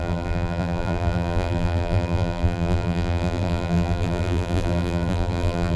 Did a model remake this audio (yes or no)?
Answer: yes